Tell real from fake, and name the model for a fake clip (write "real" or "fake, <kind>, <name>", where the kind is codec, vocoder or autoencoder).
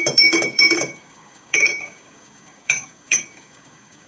fake, codec, DAC